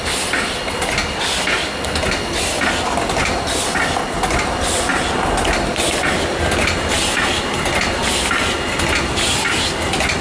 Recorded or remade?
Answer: recorded